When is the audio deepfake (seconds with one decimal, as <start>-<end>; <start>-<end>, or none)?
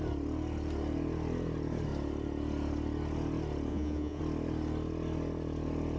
3.7-4.2